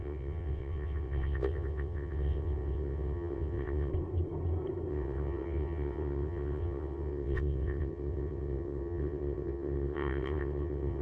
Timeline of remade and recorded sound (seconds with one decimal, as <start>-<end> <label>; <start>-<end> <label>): 0.0-3.9 remade; 3.9-4.9 recorded; 4.9-11.0 remade